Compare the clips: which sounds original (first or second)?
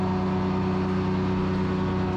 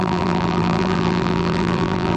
first